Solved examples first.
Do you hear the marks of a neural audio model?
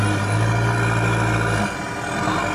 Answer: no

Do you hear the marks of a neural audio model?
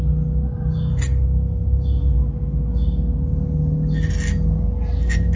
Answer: no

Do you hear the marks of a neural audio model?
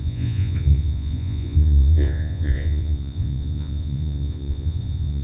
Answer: yes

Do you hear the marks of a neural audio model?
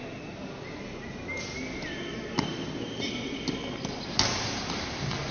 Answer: no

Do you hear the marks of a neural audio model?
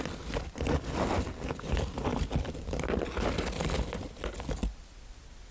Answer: no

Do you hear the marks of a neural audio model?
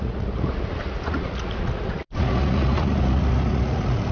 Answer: yes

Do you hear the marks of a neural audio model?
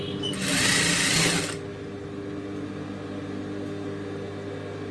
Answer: no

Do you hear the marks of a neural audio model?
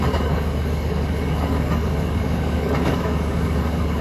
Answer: yes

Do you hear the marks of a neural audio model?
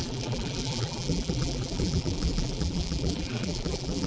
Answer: yes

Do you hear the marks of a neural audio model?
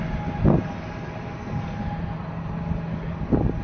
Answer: no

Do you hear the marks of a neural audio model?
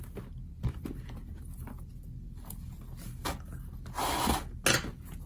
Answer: no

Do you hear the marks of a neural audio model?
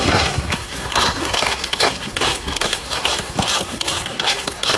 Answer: yes